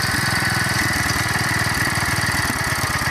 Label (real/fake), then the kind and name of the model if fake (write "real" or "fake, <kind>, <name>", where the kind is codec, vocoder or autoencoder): fake, vocoder, BigVGAN v2